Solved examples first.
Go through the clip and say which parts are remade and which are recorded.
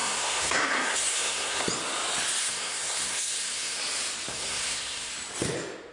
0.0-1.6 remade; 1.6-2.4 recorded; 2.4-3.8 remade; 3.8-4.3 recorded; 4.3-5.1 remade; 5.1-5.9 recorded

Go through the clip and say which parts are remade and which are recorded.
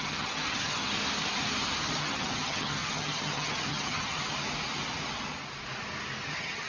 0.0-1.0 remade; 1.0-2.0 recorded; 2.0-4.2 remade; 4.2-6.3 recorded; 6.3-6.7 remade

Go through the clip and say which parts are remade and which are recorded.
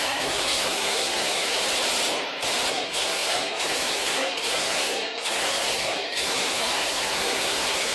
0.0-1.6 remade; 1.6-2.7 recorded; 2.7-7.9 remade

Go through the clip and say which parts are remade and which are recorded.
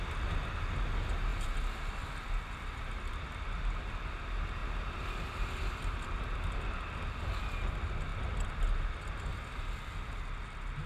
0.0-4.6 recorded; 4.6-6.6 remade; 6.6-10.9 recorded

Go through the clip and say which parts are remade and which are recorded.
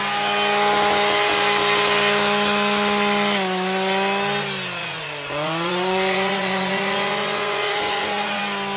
0.0-4.8 recorded; 4.8-8.4 remade; 8.4-8.8 recorded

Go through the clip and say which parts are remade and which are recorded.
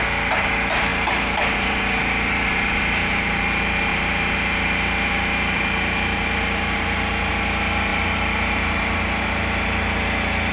0.0-0.9 recorded; 0.9-2.8 remade; 2.8-3.9 recorded; 3.9-7.3 remade; 7.3-7.9 recorded; 7.9-9.4 remade; 9.4-10.5 recorded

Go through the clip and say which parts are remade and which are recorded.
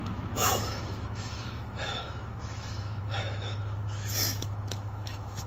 0.0-5.5 remade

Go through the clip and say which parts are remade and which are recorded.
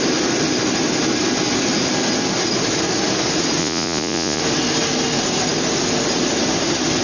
0.0-3.6 recorded; 3.6-4.4 remade; 4.4-7.0 recorded